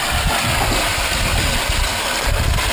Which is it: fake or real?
real